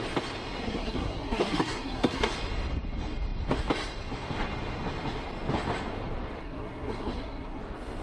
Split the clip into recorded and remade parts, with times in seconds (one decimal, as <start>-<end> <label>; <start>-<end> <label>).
0.0-0.6 recorded; 0.6-2.3 remade; 2.3-6.4 recorded; 6.4-7.6 remade; 7.6-8.0 recorded